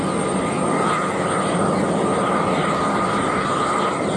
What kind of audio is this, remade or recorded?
recorded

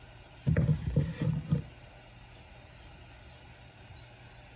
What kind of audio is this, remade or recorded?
recorded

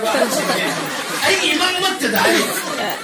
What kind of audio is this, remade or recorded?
recorded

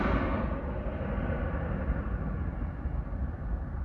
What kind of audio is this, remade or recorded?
recorded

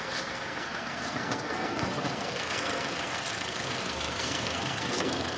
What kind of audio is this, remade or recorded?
remade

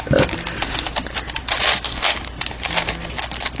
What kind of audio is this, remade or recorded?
recorded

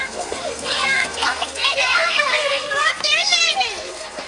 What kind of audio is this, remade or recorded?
remade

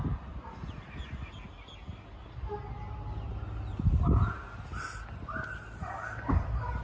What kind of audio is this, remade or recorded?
recorded